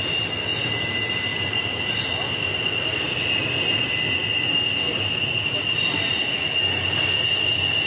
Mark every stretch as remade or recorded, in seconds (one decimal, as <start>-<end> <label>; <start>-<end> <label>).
0.0-1.3 recorded; 1.3-1.9 remade; 1.9-7.9 recorded